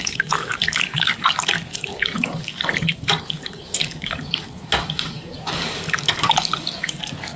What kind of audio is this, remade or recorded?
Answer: remade